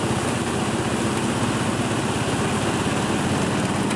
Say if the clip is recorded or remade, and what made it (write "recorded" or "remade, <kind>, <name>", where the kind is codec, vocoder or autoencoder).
recorded